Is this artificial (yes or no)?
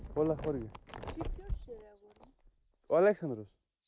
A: no